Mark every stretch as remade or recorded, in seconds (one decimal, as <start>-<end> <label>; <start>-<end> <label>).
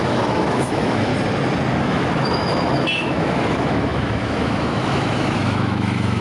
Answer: 0.0-1.1 remade; 1.1-1.8 recorded; 1.8-6.2 remade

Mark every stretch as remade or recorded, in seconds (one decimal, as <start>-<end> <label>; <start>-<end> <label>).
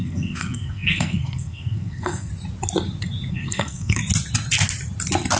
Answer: 0.0-2.3 remade; 2.3-3.3 recorded; 3.3-4.0 remade; 4.0-5.4 recorded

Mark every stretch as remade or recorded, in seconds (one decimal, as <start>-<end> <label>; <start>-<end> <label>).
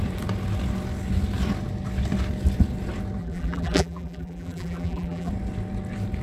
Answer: 0.0-3.2 recorded; 3.2-5.3 remade; 5.3-6.2 recorded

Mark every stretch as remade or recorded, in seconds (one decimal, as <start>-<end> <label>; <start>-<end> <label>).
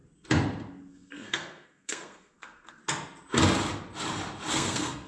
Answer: 0.0-0.9 recorded; 0.9-2.8 remade; 2.8-4.5 recorded; 4.5-5.1 remade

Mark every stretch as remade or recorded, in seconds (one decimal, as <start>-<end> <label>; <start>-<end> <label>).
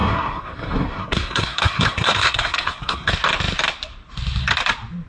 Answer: 0.0-3.1 remade; 3.1-5.1 recorded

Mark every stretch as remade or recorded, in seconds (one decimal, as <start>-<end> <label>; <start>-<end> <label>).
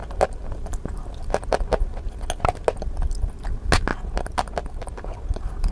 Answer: 0.0-5.7 recorded